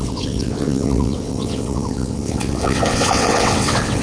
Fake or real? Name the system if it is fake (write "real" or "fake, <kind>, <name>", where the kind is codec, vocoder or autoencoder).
fake, vocoder, WaveNeXt